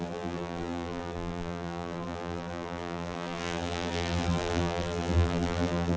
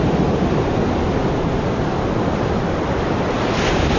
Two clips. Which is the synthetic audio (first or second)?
first